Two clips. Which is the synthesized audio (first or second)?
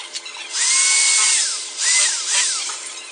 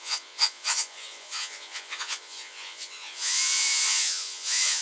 second